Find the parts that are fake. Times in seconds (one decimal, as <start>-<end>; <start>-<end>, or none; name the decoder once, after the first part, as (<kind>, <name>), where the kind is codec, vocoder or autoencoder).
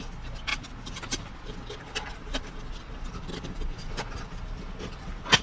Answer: 0.0-0.5 (vocoder, BigVGAN v2); 1.8-5.4